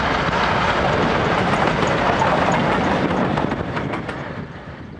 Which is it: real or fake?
real